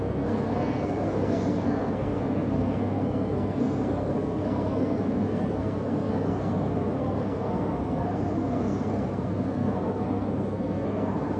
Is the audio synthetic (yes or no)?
yes